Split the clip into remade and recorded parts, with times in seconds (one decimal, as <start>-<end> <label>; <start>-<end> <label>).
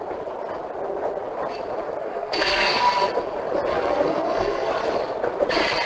0.0-2.0 recorded; 2.0-2.8 remade; 2.8-3.7 recorded; 3.7-4.7 remade; 4.7-5.9 recorded